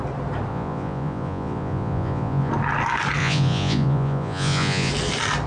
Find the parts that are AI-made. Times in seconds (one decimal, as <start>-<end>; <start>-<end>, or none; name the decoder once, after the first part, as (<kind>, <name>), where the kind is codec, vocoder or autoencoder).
0.5-2.5 (vocoder, Vocos); 3.2-4.9